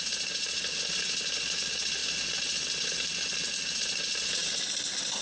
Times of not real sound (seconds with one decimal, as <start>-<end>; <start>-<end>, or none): none